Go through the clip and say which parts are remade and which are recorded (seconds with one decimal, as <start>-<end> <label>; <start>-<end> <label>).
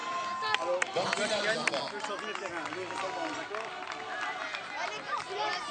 0.0-5.7 recorded